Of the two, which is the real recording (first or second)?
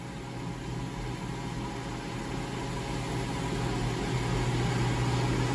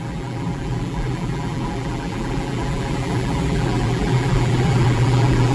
first